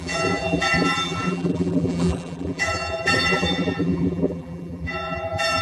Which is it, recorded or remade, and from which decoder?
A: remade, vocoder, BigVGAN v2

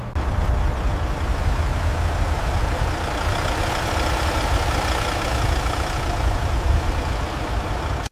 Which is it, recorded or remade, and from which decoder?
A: recorded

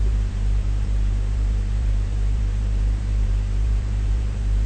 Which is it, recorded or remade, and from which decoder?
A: remade, vocoder, BigVGAN v2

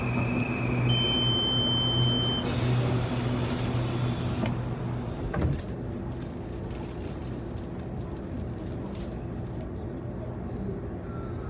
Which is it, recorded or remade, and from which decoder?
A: recorded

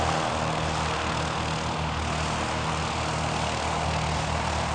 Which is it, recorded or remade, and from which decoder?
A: recorded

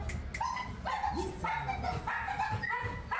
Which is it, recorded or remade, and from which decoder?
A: recorded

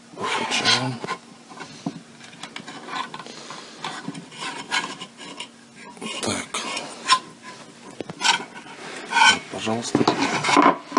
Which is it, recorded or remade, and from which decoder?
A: recorded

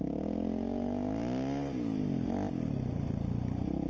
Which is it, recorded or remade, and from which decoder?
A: recorded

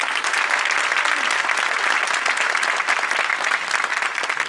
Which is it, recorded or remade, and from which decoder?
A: recorded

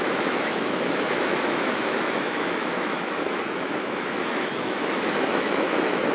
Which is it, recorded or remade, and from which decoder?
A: remade, autoencoder, DAC-VAE